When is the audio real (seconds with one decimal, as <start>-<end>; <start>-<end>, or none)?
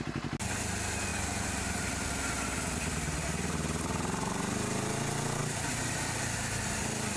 0.0-7.2